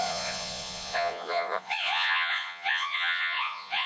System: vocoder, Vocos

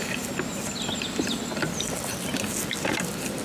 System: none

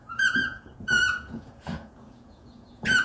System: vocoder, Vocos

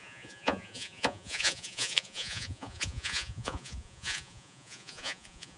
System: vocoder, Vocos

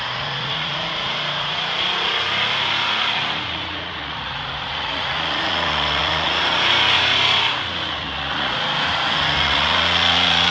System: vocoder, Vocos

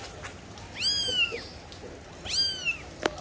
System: none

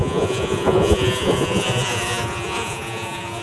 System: vocoder, Vocos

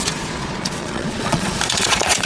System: vocoder, Vocos